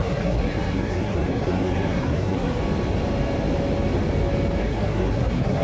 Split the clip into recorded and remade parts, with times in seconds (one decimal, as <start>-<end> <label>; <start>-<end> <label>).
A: 0.0-2.6 remade; 2.6-4.6 recorded; 4.6-5.6 remade